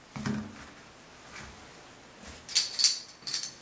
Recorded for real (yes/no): yes